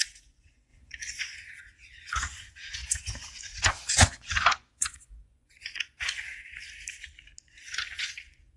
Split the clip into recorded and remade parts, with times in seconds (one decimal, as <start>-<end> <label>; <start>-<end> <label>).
0.0-6.3 remade; 6.3-7.4 recorded; 7.4-8.6 remade